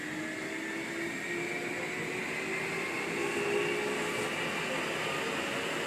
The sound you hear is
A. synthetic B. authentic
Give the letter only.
B